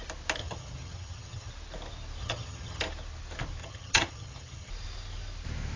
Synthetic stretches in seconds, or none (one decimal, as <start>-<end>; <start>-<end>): 0.4-1.5; 2.2-2.8; 3.6-4.7